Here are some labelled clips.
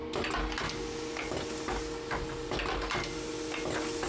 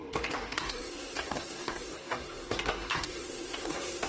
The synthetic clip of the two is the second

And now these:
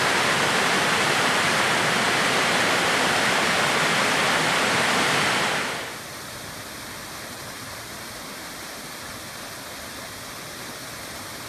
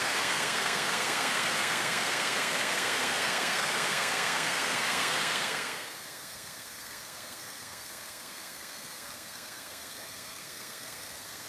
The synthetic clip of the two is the second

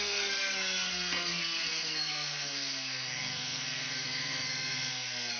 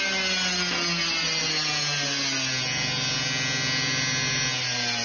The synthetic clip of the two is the first